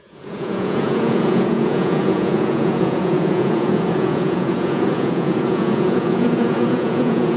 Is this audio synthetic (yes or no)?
yes